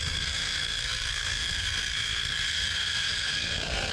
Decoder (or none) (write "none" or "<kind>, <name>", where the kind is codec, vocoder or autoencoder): codec, SNAC